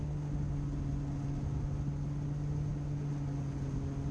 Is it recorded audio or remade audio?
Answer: recorded